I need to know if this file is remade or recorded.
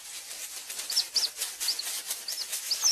recorded